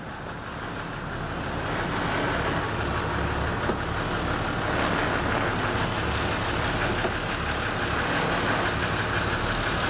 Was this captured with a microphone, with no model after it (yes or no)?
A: yes